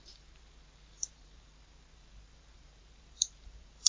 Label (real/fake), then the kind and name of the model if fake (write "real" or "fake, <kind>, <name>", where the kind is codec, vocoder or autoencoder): fake, vocoder, BigVGAN v2